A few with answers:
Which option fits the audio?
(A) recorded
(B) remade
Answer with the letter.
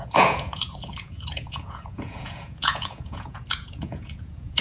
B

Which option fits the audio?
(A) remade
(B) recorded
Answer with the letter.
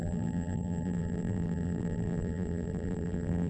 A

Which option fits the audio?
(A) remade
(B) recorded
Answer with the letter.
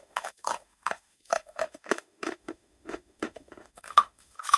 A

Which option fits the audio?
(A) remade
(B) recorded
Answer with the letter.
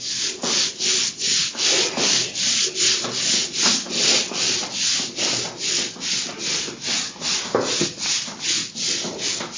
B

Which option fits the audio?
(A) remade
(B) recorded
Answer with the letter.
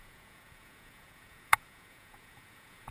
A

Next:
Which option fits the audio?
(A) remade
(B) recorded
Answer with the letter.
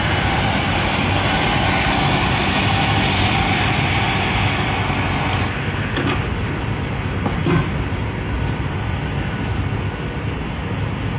B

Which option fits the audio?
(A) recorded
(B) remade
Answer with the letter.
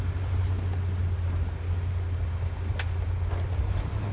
A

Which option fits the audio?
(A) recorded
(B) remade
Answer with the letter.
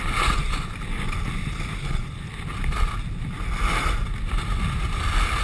A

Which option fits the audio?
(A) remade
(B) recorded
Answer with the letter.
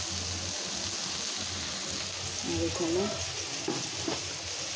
B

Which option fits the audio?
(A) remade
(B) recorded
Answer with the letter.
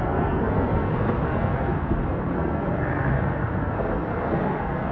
A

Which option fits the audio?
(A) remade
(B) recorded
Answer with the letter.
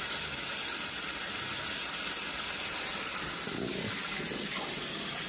B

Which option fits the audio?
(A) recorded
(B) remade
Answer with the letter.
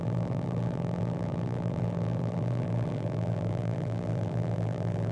B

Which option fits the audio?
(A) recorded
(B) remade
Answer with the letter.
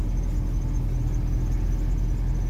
A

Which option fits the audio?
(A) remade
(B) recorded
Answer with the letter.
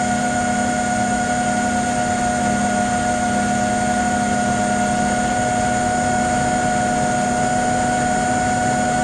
B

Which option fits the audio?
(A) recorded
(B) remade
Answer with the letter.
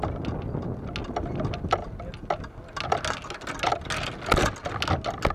A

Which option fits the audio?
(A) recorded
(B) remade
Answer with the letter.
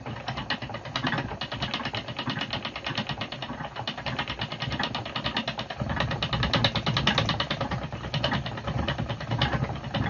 A